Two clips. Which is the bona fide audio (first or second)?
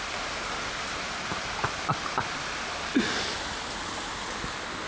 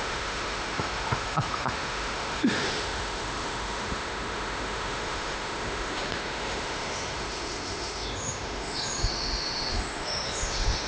first